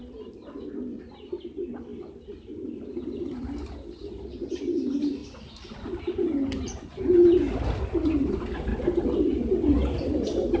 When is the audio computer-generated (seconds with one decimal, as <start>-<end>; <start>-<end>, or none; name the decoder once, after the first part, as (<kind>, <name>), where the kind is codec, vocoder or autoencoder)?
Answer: none